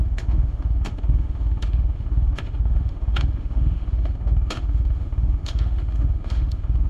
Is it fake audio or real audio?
fake